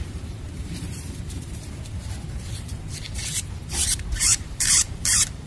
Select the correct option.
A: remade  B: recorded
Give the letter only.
A